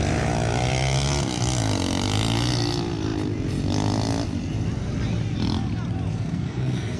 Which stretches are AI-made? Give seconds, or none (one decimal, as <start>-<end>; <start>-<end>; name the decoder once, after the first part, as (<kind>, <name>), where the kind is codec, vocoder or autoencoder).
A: 6.1-7.0 (codec, SNAC)